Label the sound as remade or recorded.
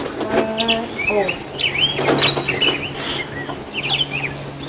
recorded